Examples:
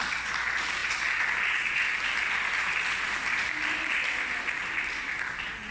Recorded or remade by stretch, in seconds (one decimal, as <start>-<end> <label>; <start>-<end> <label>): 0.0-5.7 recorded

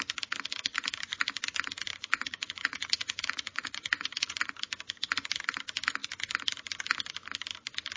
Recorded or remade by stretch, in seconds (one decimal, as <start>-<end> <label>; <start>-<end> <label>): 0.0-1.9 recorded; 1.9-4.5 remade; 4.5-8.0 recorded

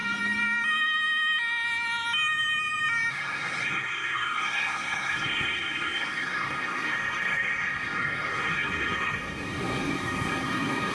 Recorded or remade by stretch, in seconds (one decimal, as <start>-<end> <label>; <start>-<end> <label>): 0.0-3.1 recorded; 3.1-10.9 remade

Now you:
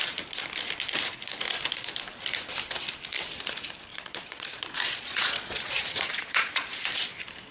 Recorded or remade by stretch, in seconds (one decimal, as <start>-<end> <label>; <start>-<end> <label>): 0.0-3.9 recorded; 3.9-6.9 remade; 6.9-7.5 recorded

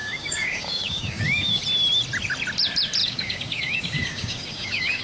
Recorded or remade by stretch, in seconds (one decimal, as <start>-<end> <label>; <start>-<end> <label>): 0.0-1.6 remade; 1.6-3.0 recorded; 3.0-5.0 remade

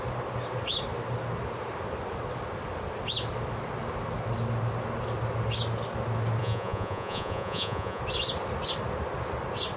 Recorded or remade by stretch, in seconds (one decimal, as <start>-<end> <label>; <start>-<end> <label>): 0.0-6.4 recorded; 6.4-8.0 remade; 8.0-9.8 recorded

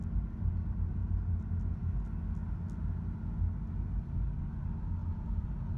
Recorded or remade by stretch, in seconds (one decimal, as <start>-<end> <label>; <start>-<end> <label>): 0.0-5.8 recorded

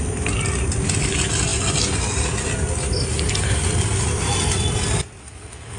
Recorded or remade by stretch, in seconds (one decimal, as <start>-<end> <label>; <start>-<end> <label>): 0.0-5.2 recorded; 5.2-5.8 remade